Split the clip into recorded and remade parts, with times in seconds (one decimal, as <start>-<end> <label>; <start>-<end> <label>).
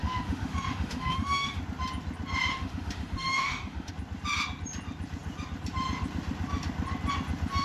0.0-1.6 remade; 1.6-2.5 recorded; 2.5-3.9 remade; 3.9-7.6 recorded